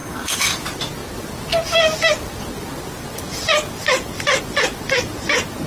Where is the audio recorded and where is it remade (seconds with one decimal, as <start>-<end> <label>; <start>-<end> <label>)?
0.0-0.6 remade; 0.6-5.7 recorded